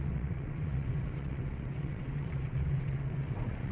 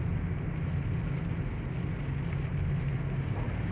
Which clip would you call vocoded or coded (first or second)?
first